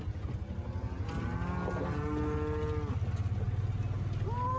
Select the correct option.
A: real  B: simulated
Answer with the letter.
A